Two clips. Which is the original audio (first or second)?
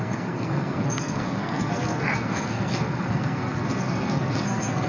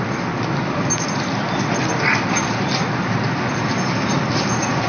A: second